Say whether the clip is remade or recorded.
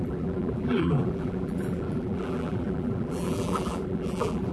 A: remade